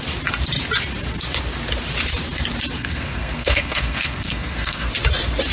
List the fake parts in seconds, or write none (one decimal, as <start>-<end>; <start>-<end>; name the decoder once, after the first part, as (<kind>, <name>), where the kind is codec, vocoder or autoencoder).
2.8-4.9 (codec, SNAC)